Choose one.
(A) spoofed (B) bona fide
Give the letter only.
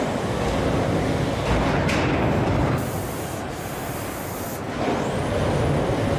B